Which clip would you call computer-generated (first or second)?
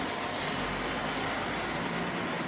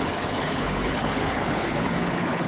second